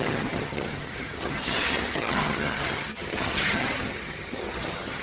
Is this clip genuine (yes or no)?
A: no